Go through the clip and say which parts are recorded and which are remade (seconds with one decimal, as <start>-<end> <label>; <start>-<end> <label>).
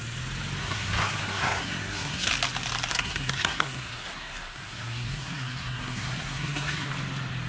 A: 0.0-0.6 recorded; 0.6-2.3 remade; 2.3-2.9 recorded; 2.9-6.9 remade; 6.9-7.5 recorded